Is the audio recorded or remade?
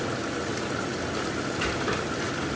recorded